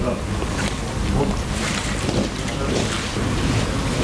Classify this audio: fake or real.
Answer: real